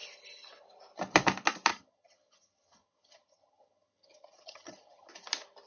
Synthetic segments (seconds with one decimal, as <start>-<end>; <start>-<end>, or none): 1.7-5.1